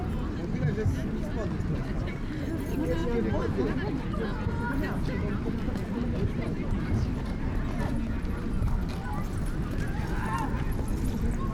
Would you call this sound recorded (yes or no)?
yes